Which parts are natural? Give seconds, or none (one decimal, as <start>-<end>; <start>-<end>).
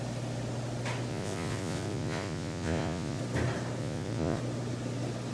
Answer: 0.0-1.1; 3.2-3.8; 4.4-5.3